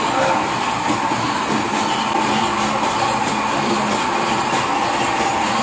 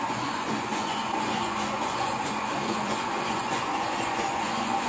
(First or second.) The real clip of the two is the first